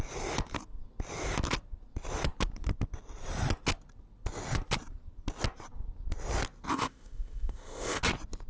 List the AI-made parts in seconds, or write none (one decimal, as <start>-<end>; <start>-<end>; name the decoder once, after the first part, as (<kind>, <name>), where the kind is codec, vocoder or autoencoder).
6.7-8.0 (codec, ZipCodec)